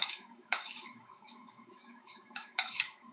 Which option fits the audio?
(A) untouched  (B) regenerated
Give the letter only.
B